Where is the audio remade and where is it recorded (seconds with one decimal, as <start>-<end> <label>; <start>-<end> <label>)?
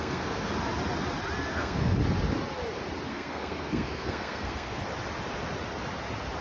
0.0-0.5 remade; 0.5-1.5 recorded; 1.5-2.0 remade; 2.0-3.1 recorded; 3.1-4.8 remade; 4.8-6.4 recorded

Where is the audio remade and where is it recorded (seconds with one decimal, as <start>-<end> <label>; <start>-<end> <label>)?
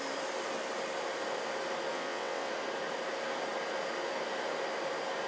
0.0-1.9 recorded; 1.9-2.5 remade; 2.5-5.3 recorded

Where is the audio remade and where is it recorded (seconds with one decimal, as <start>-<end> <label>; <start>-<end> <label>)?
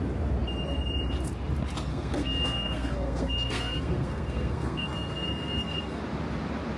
0.0-1.9 recorded; 1.9-6.0 remade; 6.0-6.8 recorded